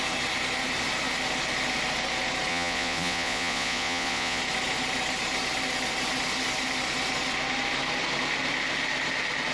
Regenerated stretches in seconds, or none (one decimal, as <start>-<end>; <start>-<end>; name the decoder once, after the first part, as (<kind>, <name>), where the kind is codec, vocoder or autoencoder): 2.5-4.4 (vocoder, Vocos)

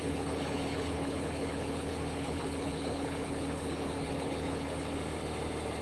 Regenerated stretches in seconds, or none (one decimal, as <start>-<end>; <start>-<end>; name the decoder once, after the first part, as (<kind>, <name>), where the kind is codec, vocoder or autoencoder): 0.0-4.9 (codec, HILCodec)

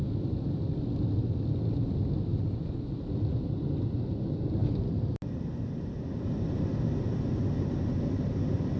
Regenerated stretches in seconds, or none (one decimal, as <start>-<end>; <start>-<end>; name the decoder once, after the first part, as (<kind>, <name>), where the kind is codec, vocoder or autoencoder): none

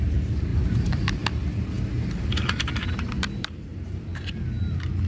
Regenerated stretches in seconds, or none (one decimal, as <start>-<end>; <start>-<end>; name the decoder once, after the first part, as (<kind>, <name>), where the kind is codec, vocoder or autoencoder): 0.5-1.1 (vocoder, BigVGAN v2); 1.9-4.3

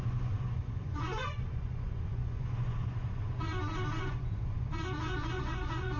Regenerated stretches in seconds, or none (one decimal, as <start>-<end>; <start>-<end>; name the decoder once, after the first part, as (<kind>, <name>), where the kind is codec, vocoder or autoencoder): 0.0-3.5 (vocoder, Vocos); 4.0-6.0

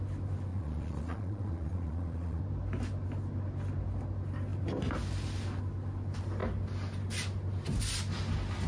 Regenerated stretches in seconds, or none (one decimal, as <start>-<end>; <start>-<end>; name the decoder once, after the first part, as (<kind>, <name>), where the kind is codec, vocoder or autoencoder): 0.5-2.4 (vocoder, Vocos)